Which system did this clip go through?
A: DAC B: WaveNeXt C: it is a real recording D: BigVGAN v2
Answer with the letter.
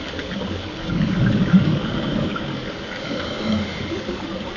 A